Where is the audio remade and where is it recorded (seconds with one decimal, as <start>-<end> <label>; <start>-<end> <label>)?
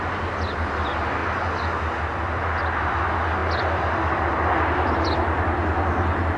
0.0-6.4 recorded